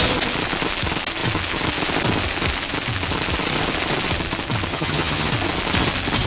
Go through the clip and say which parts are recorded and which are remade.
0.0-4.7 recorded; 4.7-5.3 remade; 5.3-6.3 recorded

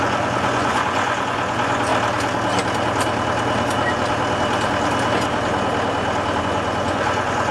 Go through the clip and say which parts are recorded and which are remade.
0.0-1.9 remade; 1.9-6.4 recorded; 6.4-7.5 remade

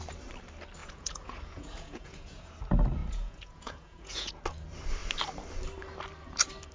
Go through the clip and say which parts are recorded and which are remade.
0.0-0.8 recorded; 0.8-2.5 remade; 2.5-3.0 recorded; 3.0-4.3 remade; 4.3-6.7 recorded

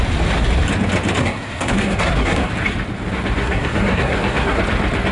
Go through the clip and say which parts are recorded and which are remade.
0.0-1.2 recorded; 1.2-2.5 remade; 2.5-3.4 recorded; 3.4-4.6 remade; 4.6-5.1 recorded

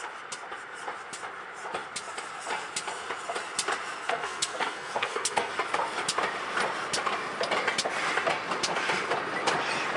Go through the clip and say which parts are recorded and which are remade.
0.0-4.0 recorded; 4.0-5.5 remade; 5.5-10.0 recorded

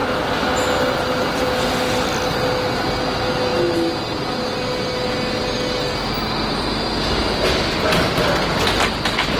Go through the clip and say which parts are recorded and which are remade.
0.0-9.4 recorded